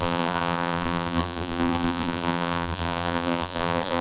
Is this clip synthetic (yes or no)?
yes